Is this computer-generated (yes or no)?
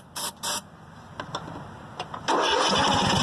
no